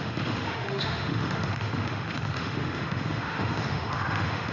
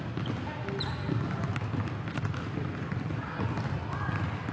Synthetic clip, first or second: first